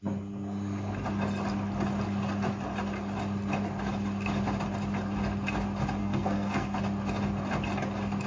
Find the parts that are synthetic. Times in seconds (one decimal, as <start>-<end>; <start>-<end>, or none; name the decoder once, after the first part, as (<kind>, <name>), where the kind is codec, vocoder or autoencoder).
6.0-6.8 (codec, SNAC)